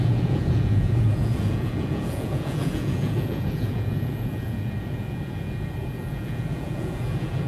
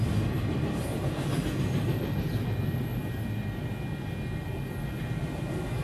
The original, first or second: second